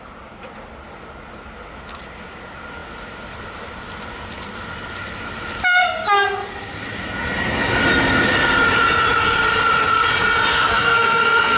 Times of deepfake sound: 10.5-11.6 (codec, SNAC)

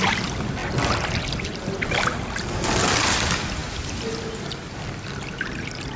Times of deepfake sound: none

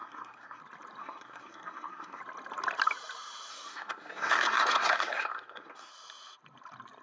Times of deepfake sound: 0.0-0.6 (codec, SNAC); 1.0-2.2; 3.5-5.9